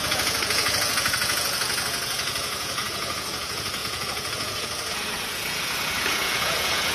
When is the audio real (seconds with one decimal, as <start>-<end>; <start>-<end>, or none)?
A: none